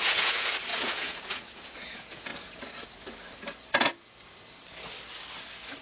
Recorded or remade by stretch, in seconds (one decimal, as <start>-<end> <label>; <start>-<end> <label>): 0.0-2.3 remade; 2.3-5.8 recorded